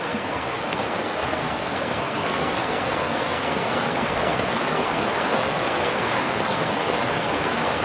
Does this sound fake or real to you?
fake